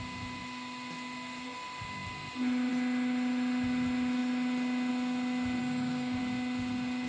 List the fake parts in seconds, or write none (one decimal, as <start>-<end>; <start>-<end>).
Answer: 5.6-6.2